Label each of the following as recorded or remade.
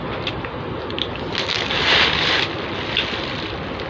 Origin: recorded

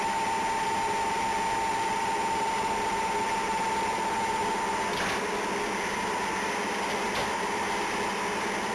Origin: recorded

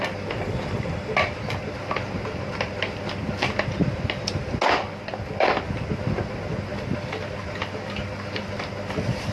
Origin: recorded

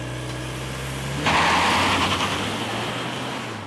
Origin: recorded